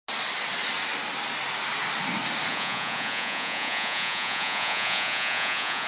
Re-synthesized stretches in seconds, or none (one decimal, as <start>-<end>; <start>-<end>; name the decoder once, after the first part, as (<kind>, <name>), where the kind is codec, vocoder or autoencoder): 2.5-5.9 (vocoder, Vocos)